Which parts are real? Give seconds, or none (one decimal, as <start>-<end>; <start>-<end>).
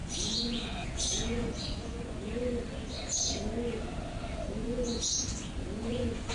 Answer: 2.4-4.6